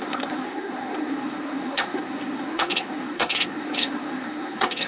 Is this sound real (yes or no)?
no